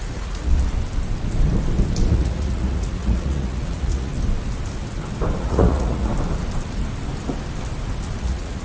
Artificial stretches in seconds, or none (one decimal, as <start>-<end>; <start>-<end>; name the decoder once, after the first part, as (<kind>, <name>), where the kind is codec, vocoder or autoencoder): 0.0-0.5 (vocoder, Vocos); 2.1-4.1; 5.4-6.1; 8.2-8.6